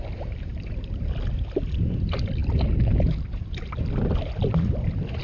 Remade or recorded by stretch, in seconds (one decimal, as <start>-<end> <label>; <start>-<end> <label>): 0.0-5.2 recorded